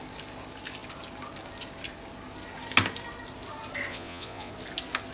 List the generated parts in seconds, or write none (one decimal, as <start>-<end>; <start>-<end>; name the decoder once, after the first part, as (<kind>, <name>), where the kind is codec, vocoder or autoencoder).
3.9-4.5 (vocoder, Vocos)